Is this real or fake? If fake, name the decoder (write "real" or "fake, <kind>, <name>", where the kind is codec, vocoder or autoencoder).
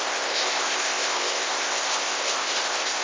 fake, codec, ZipCodec